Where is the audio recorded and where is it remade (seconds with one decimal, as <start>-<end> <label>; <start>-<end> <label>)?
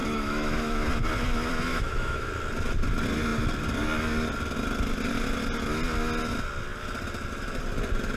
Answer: 0.0-0.9 remade; 0.9-1.7 recorded; 1.7-2.3 remade; 2.3-8.2 recorded